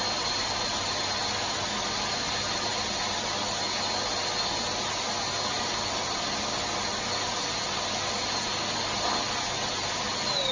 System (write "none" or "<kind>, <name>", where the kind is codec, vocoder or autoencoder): none